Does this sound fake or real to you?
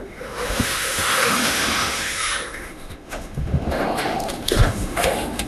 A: fake